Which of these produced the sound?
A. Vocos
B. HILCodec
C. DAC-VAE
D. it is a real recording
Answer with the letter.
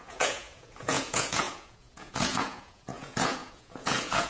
A